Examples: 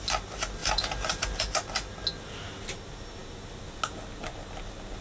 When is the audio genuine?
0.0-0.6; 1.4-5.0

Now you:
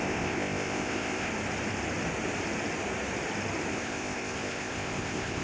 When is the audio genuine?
1.3-3.7